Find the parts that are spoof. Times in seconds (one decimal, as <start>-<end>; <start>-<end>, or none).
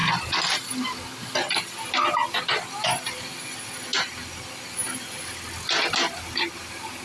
none